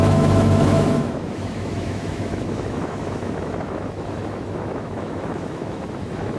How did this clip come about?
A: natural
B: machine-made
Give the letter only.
B